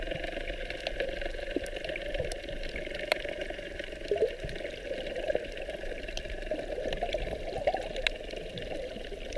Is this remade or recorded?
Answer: recorded